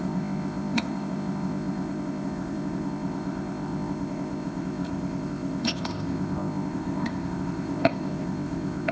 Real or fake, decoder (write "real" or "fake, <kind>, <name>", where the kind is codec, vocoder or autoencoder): fake, codec, ZipCodec